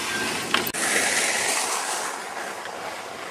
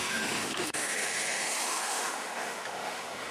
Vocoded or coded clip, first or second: second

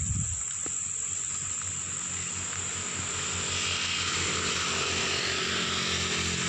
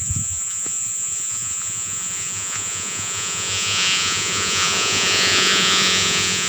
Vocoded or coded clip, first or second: second